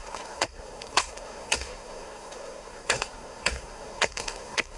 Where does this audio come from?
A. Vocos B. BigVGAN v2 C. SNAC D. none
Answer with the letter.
C